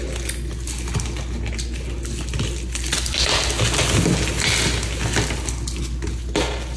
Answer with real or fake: real